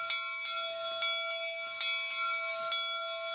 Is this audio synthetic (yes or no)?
no